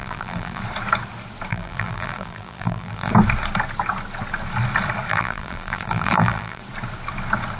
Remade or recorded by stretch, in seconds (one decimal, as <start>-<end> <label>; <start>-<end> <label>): 0.0-0.6 remade; 0.6-1.5 recorded; 1.5-3.1 remade; 3.1-5.1 recorded; 5.1-6.6 remade; 6.6-7.6 recorded